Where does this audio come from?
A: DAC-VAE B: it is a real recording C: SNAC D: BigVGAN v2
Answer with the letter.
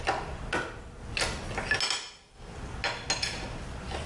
B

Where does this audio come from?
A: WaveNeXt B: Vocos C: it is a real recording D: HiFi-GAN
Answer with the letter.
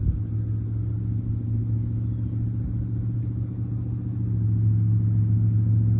C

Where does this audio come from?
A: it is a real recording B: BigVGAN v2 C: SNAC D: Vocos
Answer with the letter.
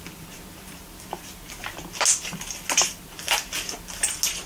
A